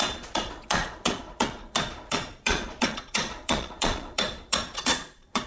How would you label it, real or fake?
fake